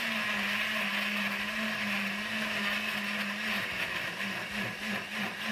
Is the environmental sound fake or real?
real